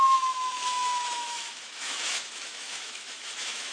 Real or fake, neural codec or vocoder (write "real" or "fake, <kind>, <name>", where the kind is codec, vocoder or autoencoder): fake, autoencoder, DAC-VAE